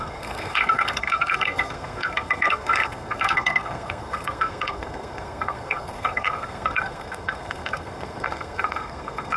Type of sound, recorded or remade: remade